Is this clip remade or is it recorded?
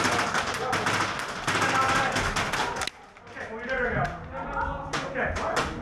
recorded